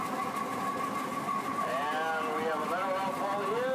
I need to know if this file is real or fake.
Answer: real